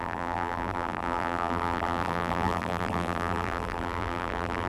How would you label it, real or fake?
fake